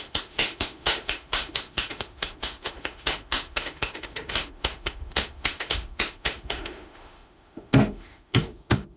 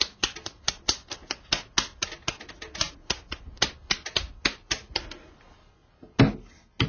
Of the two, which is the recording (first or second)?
second